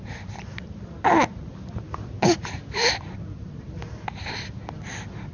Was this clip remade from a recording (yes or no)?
no